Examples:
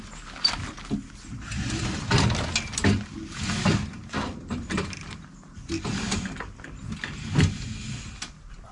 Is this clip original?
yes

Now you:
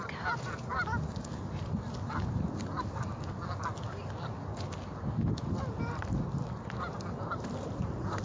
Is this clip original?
yes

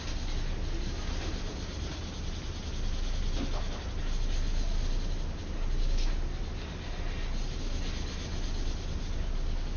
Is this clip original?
yes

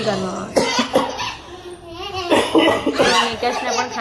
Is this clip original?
yes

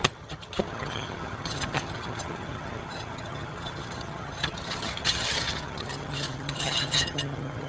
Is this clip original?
no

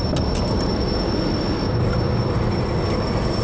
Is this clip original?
yes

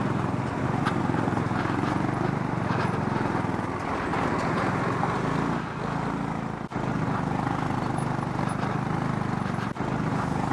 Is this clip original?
yes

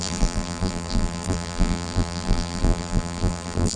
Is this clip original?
no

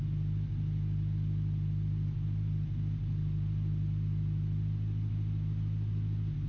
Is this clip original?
yes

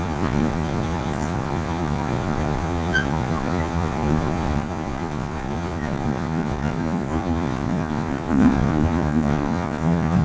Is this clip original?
no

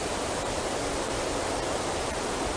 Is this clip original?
yes